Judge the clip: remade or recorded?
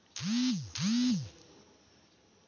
recorded